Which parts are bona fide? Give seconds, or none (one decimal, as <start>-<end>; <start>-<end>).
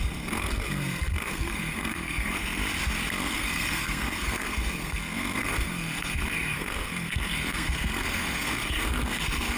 2.6-3.2